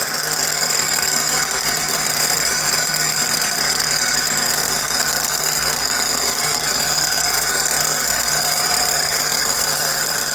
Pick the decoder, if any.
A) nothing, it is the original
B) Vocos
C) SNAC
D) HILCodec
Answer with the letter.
C